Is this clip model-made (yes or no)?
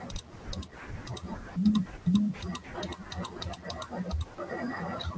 no